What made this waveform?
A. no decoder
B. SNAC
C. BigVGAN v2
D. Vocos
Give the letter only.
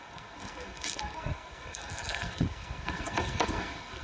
B